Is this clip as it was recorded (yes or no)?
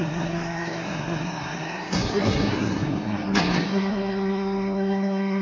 no